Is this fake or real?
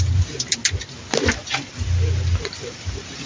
real